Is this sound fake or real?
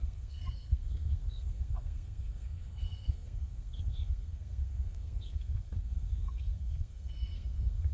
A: fake